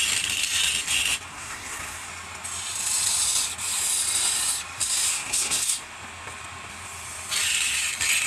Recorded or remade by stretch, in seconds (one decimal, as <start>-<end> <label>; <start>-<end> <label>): 0.0-1.3 recorded; 1.3-2.1 remade; 2.1-5.1 recorded; 5.1-5.9 remade; 5.9-8.3 recorded